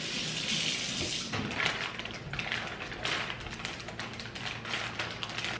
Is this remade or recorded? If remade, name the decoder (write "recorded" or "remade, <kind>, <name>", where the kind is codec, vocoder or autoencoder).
recorded